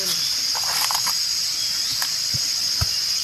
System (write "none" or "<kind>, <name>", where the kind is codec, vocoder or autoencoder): none